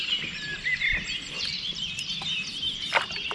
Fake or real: real